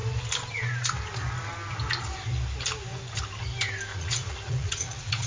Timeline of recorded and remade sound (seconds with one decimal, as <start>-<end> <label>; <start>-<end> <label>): 0.0-3.9 recorded; 3.9-5.3 remade